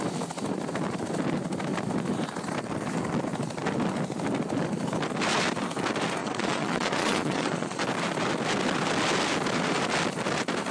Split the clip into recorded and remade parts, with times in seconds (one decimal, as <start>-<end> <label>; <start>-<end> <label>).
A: 0.0-6.2 recorded; 6.2-7.8 remade; 7.8-10.7 recorded